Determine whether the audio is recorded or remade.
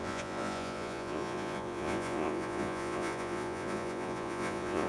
remade